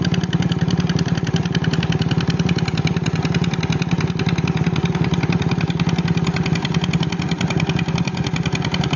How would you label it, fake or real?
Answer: real